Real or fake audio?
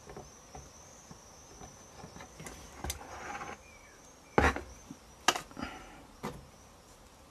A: real